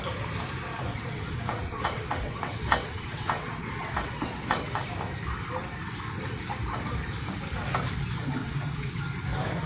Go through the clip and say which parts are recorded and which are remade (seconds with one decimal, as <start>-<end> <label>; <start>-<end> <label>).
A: 0.0-0.9 recorded; 0.9-4.8 remade; 4.8-8.4 recorded; 8.4-8.9 remade; 8.9-9.7 recorded